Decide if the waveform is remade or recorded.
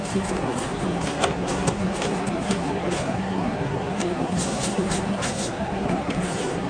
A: remade